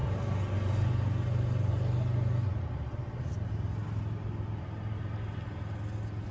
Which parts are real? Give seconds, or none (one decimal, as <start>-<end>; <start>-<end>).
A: 0.0-6.3